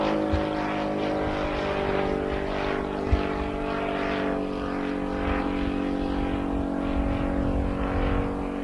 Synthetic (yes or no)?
no